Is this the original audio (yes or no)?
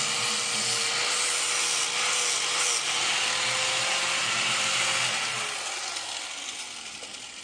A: yes